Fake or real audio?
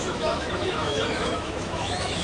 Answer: fake